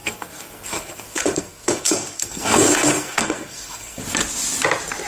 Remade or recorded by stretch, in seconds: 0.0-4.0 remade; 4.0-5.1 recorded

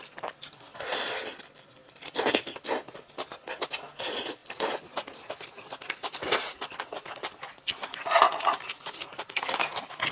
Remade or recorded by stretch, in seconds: 0.0-0.7 recorded; 0.7-1.4 remade; 1.4-1.8 recorded; 1.8-2.3 remade; 2.3-4.4 recorded; 4.4-5.3 remade; 5.3-6.1 recorded; 6.1-7.8 remade; 7.8-10.1 recorded

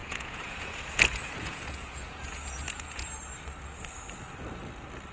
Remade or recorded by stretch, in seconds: 0.0-3.1 remade; 3.1-5.1 recorded

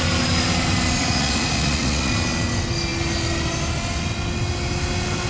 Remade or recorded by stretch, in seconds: 0.0-1.0 recorded; 1.0-2.1 remade; 2.1-5.3 recorded

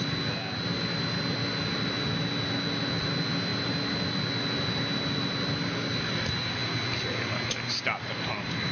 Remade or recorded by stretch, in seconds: 0.0-8.7 recorded